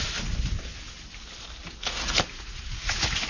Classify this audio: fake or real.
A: real